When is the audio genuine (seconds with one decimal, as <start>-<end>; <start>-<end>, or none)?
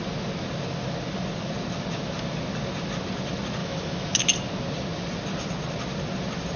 0.0-3.6; 4.2-6.6